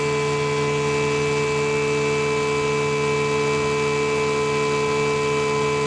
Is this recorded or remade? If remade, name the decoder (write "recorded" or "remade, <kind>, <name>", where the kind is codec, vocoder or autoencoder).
recorded